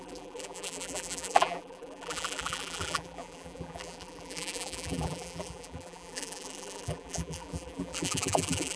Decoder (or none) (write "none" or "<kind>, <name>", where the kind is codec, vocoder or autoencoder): vocoder, BigVGAN v2